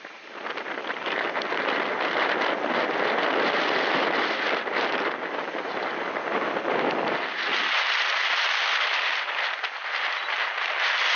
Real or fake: real